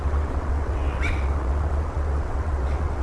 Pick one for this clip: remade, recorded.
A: remade